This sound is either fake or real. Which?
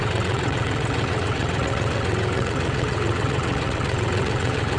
fake